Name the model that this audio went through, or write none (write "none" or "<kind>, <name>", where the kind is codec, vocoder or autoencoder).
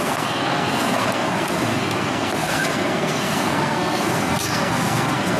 codec, SNAC